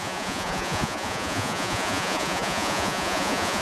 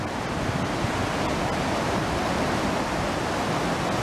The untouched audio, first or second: second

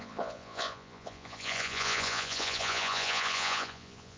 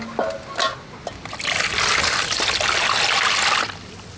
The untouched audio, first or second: second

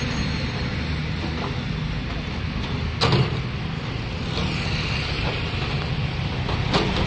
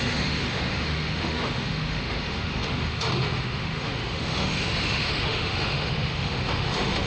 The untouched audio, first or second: first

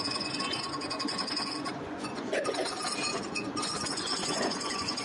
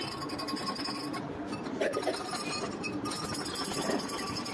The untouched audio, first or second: second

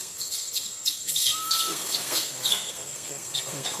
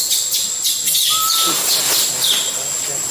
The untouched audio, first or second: second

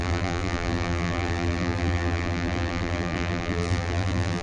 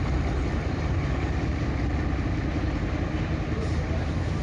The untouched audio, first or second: second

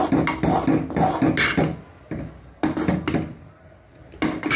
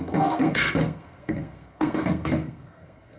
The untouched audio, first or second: first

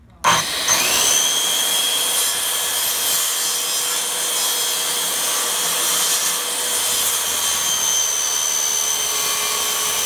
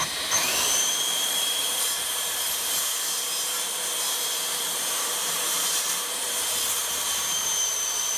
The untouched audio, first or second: first